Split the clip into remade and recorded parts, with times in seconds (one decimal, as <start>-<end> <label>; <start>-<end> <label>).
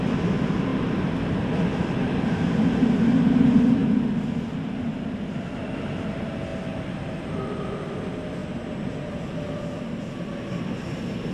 0.0-8.4 recorded; 8.4-8.9 remade; 8.9-11.3 recorded